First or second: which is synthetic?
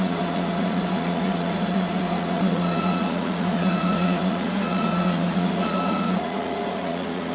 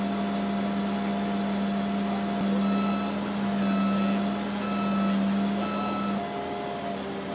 first